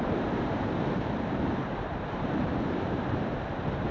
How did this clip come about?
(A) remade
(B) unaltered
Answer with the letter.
A